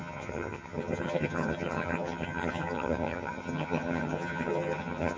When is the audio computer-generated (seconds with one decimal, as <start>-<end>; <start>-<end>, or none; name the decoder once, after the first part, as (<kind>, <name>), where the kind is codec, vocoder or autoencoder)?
0.0-5.2 (vocoder, HiFi-GAN)